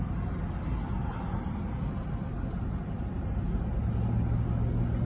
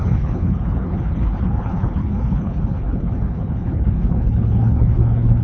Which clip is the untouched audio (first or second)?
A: first